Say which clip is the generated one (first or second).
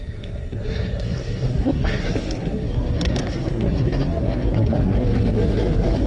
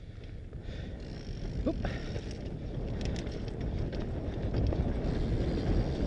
first